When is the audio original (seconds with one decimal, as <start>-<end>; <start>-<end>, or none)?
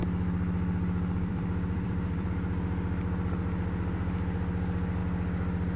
2.3-5.8